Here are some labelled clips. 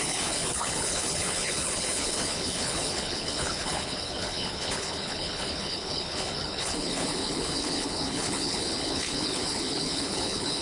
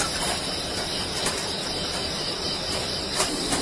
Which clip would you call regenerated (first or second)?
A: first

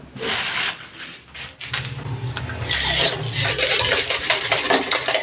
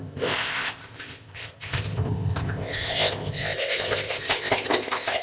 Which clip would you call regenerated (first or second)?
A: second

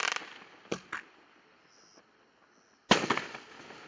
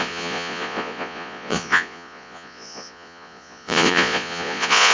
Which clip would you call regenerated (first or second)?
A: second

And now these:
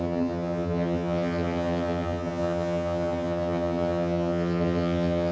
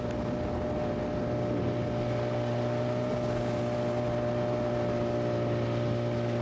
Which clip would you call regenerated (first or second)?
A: first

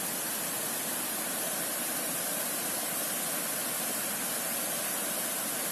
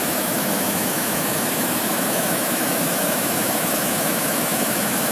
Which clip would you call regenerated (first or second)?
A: second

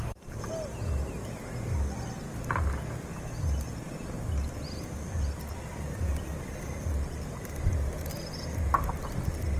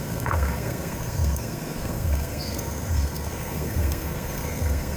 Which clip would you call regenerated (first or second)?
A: second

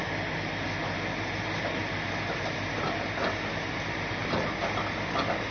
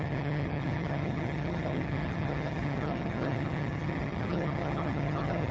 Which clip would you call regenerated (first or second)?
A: second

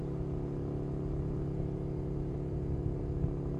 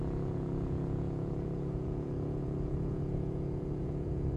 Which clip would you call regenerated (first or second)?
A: second